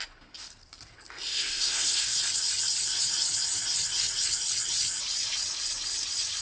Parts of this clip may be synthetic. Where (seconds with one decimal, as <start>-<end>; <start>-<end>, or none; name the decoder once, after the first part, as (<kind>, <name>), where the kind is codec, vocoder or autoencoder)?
1.3-2.2 (codec, SNAC)